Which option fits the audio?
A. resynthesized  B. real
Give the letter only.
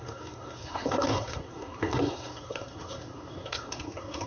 A